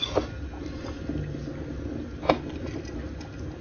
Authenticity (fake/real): real